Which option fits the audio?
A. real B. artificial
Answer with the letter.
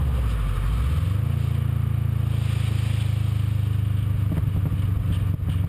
A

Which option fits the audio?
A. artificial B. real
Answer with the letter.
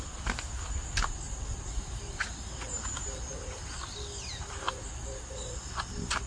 B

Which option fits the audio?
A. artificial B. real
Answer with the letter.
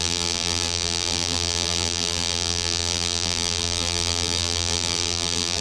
A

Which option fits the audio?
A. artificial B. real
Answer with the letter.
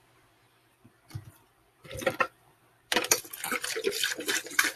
A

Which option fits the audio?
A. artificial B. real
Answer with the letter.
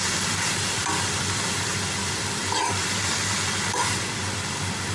B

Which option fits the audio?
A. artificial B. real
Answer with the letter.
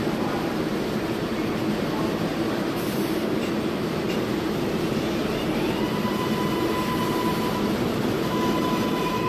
A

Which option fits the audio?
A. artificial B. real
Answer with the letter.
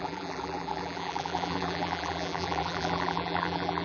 A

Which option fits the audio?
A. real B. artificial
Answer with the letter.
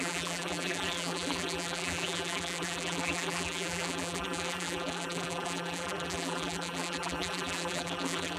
B